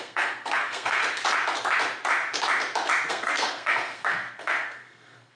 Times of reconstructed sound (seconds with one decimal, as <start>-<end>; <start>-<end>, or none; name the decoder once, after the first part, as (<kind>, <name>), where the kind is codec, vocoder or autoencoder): 0.0-1.0 (codec, SNAC); 3.1-5.4